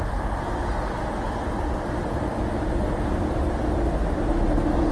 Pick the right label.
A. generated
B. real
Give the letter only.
B